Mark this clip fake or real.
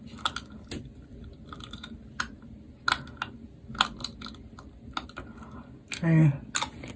real